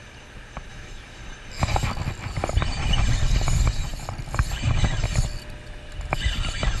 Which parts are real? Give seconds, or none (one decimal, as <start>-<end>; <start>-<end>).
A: 0.0-0.7; 1.2-6.8